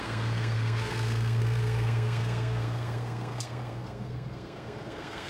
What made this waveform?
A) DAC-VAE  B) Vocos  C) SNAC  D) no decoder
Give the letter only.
C